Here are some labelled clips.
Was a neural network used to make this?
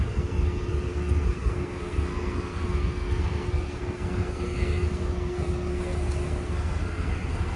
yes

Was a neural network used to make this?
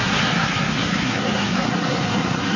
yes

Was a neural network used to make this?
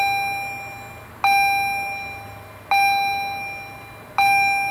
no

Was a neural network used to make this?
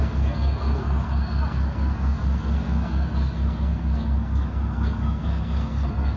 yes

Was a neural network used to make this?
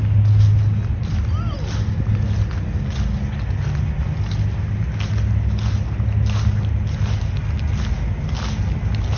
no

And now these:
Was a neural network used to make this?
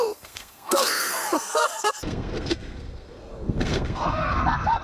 yes